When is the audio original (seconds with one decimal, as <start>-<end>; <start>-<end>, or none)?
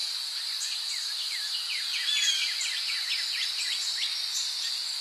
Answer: 1.3-5.0